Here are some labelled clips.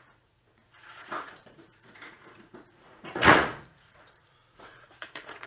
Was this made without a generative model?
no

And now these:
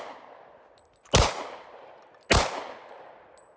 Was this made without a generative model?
yes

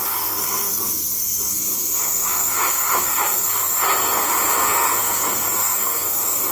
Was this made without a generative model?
no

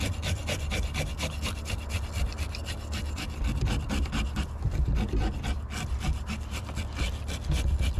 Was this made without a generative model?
yes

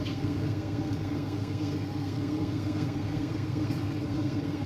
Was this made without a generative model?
no